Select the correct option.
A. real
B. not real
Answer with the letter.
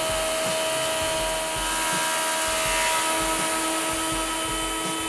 A